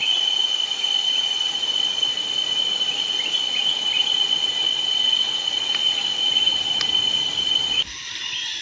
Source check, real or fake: real